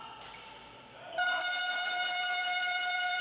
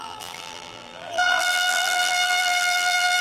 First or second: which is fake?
second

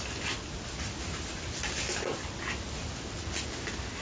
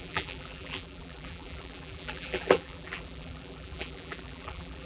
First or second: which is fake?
second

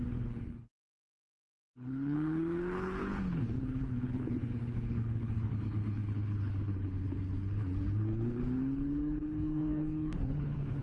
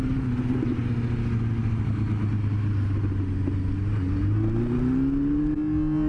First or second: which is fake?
first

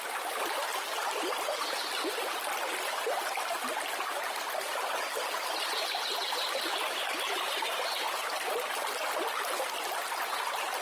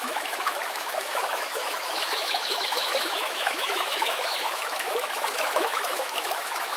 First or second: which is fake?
second